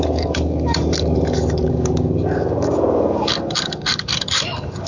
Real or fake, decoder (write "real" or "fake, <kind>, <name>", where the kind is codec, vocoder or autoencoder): fake, codec, DAC